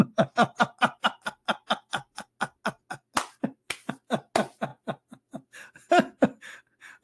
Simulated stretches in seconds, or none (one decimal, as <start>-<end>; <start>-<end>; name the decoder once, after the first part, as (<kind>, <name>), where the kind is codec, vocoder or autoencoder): none